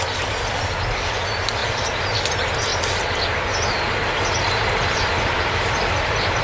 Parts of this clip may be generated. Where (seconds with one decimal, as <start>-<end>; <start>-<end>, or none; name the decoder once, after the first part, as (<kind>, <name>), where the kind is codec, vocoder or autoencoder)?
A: none